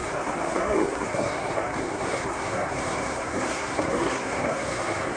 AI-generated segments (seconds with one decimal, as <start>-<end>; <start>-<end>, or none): 0.0-5.2

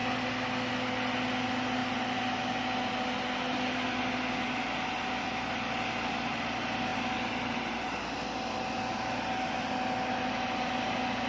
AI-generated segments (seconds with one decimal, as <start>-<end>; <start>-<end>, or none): none

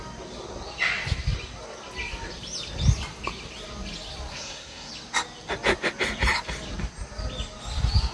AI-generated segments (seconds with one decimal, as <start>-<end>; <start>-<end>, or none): 4.3-4.9

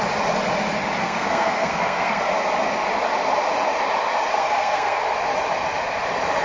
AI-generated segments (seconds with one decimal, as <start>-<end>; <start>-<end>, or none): 1.0-2.2; 4.3-5.0

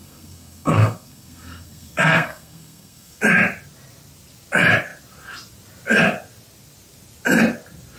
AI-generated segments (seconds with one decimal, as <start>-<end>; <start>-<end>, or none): 0.0-3.2